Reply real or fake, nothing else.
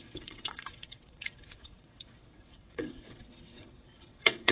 fake